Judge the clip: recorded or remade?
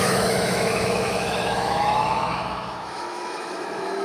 remade